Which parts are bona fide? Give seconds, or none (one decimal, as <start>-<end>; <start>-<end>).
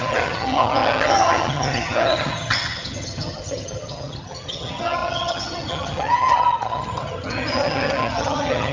none